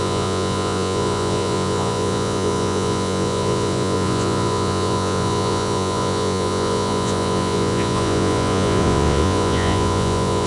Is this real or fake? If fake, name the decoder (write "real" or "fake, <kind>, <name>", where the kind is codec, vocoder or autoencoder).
fake, vocoder, Vocos